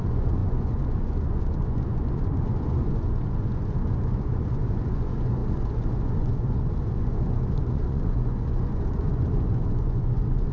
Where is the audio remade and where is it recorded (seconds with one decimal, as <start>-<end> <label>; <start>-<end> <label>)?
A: 0.0-10.5 remade

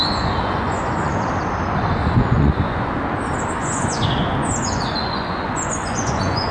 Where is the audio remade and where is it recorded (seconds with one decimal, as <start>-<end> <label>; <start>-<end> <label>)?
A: 0.0-1.2 remade; 1.2-2.0 recorded; 2.0-2.9 remade; 2.9-3.6 recorded; 3.6-6.5 remade